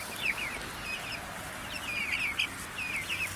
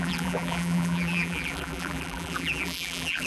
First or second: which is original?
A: first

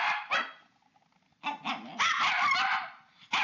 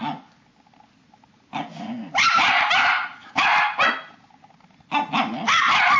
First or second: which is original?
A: second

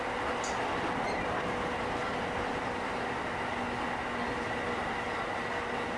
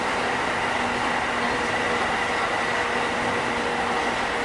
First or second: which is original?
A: first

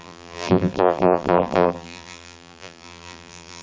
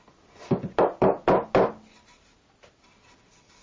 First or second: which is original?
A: second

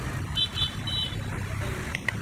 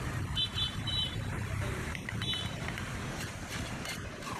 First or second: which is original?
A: first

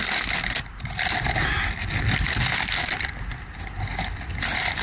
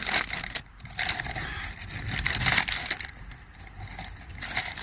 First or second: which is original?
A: first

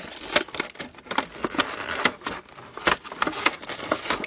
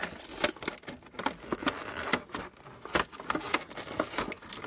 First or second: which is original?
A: second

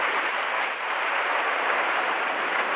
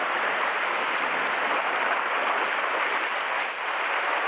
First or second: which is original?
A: second